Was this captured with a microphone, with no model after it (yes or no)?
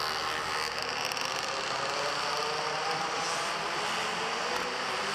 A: yes